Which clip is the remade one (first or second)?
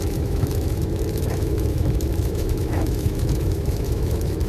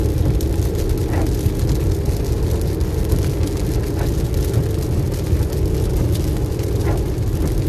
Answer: first